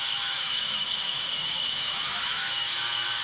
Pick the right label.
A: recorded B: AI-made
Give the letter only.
B